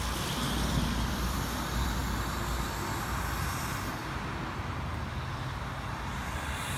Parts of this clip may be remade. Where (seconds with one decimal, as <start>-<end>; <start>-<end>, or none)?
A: 0.0-2.0; 6.1-6.8

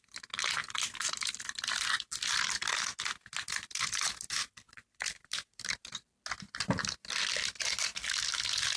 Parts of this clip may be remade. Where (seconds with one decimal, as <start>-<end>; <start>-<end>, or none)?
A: 4.4-6.0

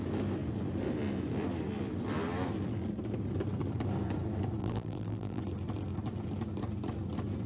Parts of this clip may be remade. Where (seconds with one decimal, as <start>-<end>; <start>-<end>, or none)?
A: 4.6-5.4

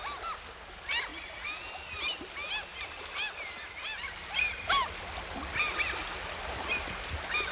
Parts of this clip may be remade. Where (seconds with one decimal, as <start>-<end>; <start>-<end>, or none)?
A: 1.1-2.3; 2.7-5.4

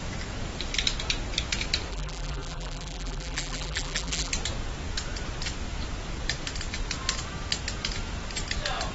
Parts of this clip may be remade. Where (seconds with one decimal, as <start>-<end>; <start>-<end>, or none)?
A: 1.9-4.3

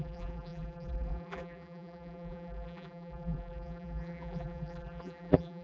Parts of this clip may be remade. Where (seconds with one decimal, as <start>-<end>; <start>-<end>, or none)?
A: 0.0-5.6

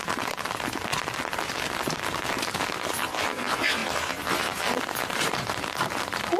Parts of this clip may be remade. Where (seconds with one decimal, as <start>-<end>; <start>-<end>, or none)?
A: 0.0-0.9; 2.3-3.8; 4.4-6.4

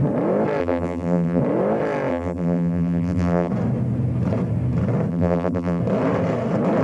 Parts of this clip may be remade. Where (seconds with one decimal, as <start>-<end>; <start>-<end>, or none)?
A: 0.6-1.4; 2.1-3.5; 5.1-5.8